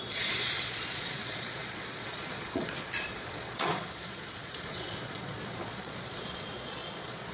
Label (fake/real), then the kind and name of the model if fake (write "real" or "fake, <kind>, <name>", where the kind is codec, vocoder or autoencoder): fake, vocoder, Vocos